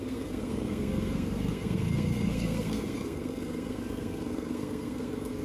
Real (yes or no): no